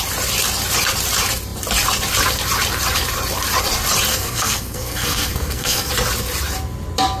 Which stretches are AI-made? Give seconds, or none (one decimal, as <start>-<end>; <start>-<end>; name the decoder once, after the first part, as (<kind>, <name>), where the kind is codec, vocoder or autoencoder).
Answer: 4.1-5.9 (codec, SNAC)